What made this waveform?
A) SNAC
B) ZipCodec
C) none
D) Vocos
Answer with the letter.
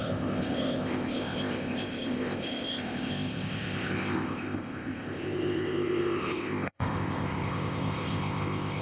B